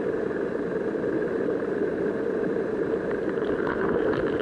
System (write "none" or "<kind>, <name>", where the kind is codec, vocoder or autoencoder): none